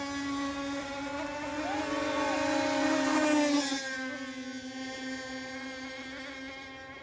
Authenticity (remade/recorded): recorded